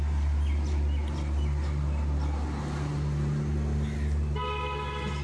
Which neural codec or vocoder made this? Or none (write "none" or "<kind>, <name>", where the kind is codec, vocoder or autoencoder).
none